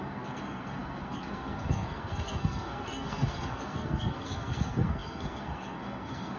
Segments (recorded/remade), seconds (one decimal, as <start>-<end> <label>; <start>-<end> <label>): 0.0-6.4 remade